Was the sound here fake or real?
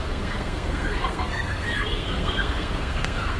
fake